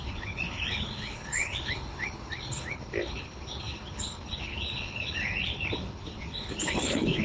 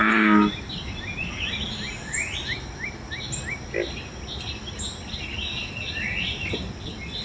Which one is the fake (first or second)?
first